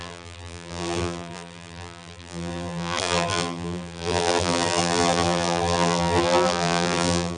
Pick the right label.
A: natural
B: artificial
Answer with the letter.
B